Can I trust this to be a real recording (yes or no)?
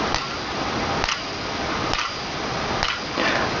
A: yes